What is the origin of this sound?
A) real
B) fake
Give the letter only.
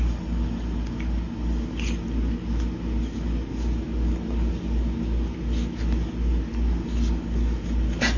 A